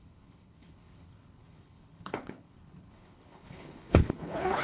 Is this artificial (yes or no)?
yes